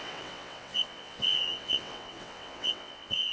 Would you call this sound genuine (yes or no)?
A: no